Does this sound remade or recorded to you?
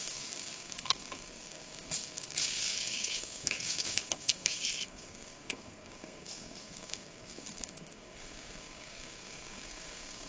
remade